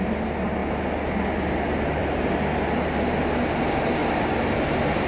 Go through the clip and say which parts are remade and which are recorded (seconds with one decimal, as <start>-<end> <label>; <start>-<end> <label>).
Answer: 0.0-4.0 recorded; 4.0-5.1 remade